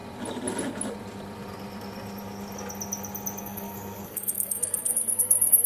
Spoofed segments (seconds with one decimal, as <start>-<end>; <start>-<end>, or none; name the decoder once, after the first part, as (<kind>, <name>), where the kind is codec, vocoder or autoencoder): 3.4-5.7 (codec, SNAC)